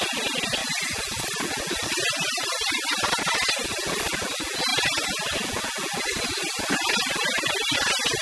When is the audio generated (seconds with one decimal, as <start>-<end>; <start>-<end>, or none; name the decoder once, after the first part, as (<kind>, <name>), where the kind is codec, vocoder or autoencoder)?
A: none